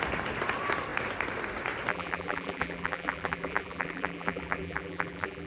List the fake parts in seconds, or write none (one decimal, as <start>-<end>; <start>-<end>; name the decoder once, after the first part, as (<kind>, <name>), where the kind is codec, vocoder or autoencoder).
1.9-5.5 (vocoder, BigVGAN v2)